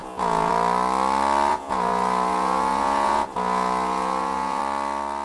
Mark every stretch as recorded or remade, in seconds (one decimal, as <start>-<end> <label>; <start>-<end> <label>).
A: 0.0-0.5 remade; 0.5-1.5 recorded; 1.5-4.6 remade; 4.6-5.2 recorded